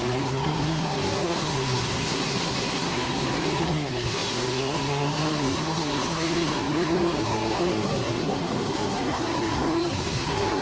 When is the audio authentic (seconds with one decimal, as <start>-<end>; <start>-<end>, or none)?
none